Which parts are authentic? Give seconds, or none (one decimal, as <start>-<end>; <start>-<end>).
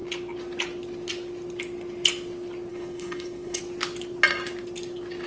0.0-2.7; 3.6-5.3